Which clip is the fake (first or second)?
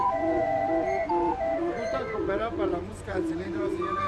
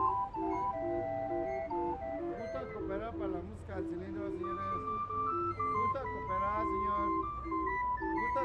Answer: first